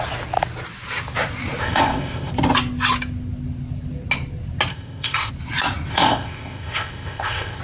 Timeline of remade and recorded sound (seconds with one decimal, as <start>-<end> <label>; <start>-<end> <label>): 0.0-1.6 recorded; 1.6-2.3 remade; 2.3-4.7 recorded; 4.7-5.3 remade; 5.3-5.9 recorded; 5.9-7.6 remade